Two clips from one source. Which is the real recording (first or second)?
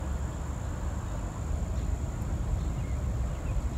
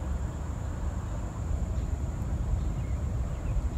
first